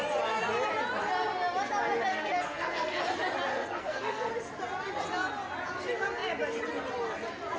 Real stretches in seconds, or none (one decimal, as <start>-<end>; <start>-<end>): 0.0-2.1; 3.0-3.5; 4.3-7.6